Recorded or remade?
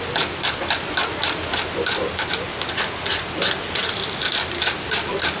recorded